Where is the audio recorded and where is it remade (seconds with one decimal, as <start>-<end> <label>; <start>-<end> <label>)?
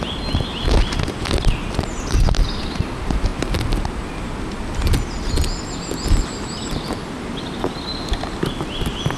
0.0-9.2 recorded